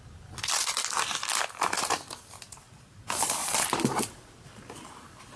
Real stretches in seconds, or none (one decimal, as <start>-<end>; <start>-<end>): 0.0-3.4; 4.5-5.4